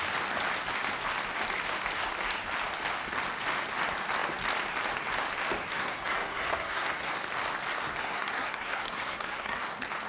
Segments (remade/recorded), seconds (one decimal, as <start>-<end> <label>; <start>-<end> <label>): 0.0-5.7 recorded; 5.7-7.1 remade; 7.1-8.0 recorded; 8.0-9.6 remade; 9.6-10.1 recorded